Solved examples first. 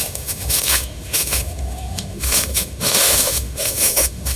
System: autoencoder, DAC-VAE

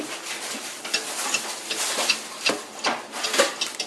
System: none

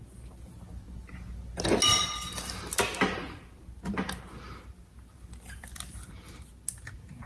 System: none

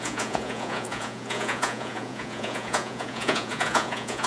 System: vocoder, Vocos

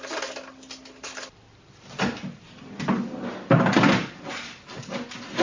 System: none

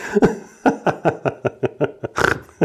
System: none